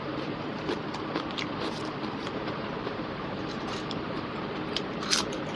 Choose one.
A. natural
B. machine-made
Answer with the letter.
B